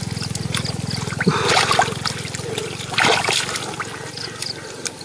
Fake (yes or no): no